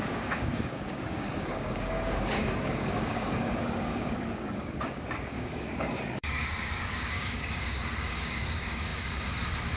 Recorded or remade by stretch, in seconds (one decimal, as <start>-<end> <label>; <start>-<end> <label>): 0.0-9.8 remade